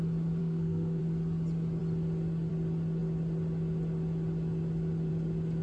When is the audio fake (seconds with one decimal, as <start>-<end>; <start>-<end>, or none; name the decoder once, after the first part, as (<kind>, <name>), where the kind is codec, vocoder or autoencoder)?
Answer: 0.4-1.0 (codec, SNAC)